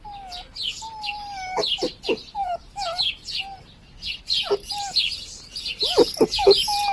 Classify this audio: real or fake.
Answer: real